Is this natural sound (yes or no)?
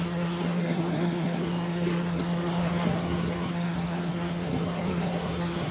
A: no